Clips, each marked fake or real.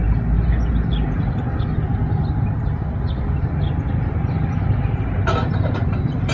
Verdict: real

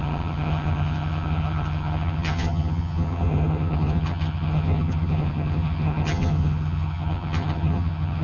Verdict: fake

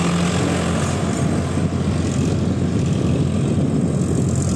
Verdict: real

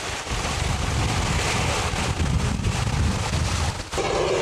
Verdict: real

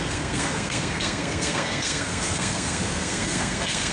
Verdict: fake